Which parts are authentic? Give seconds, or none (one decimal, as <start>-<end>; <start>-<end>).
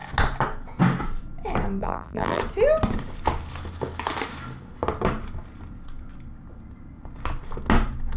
0.0-1.8; 2.4-8.2